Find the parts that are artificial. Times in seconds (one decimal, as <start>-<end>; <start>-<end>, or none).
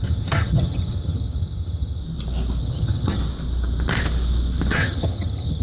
0.0-2.0; 2.6-3.2; 4.7-5.6